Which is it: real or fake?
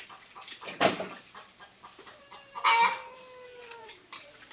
real